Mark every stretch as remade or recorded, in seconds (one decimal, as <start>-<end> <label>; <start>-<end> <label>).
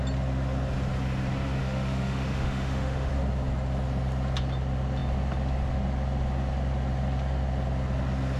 0.0-1.6 recorded; 1.6-3.1 remade; 3.1-8.4 recorded